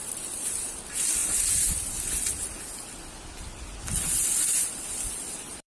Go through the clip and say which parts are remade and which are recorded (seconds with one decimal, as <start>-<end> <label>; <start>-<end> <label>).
0.0-1.2 remade; 1.2-3.8 recorded; 3.8-5.7 remade